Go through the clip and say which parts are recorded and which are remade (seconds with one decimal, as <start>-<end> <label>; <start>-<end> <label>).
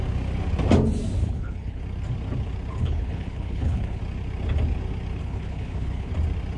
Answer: 0.0-1.2 recorded; 1.2-1.8 remade; 1.8-2.8 recorded; 2.8-4.0 remade; 4.0-5.2 recorded; 5.2-6.1 remade; 6.1-6.6 recorded